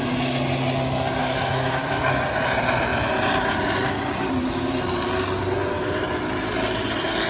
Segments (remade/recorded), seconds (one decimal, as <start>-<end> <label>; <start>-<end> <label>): 0.0-1.2 recorded; 1.2-2.0 remade; 2.0-7.3 recorded